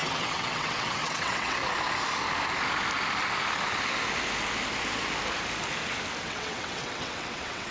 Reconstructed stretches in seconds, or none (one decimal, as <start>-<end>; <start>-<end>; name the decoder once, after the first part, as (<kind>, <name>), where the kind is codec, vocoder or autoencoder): 0.0-1.6 (vocoder, WaveNeXt); 6.2-7.7